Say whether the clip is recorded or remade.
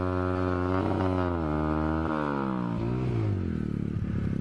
recorded